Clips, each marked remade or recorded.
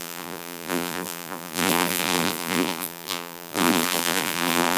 remade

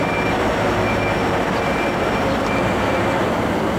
remade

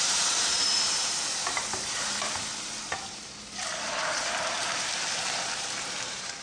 remade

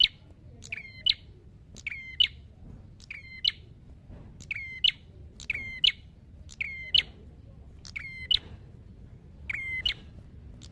recorded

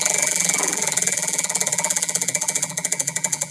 remade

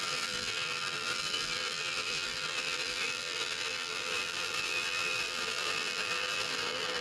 remade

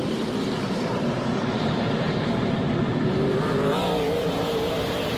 remade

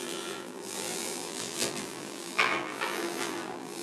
remade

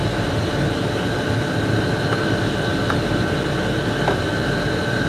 recorded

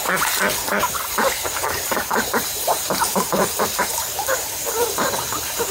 remade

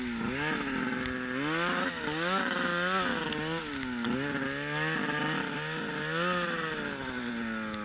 recorded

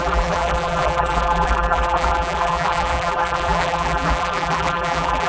remade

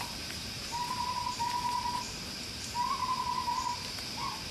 remade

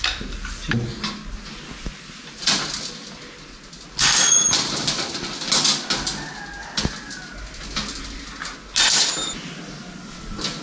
recorded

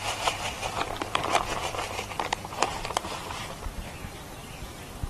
remade